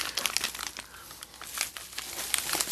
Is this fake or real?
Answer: real